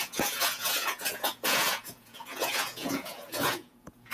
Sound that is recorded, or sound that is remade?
remade